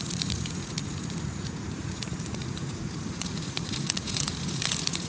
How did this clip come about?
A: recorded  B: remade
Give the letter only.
B